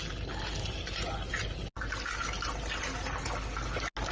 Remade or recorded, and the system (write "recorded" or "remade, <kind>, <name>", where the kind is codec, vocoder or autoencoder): recorded